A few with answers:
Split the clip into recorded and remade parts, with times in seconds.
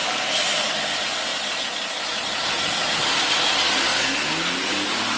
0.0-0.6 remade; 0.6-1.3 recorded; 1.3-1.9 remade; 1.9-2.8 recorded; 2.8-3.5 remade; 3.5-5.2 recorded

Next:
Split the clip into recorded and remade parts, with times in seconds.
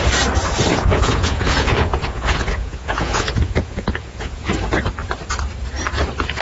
0.0-0.7 recorded; 0.7-4.5 remade; 4.5-6.4 recorded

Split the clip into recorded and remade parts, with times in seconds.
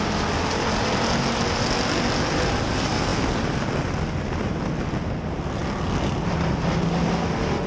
0.0-7.7 recorded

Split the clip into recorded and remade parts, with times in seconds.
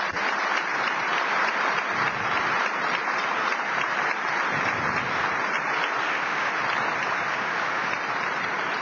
0.0-6.0 recorded; 6.0-6.5 remade; 6.5-7.3 recorded; 7.3-7.9 remade; 7.9-8.8 recorded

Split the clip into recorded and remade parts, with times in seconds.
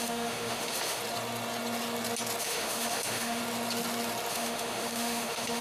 0.0-1.0 remade; 1.0-2.4 recorded; 2.4-3.4 remade; 3.4-4.3 recorded; 4.3-5.6 remade